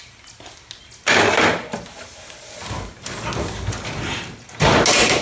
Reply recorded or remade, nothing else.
recorded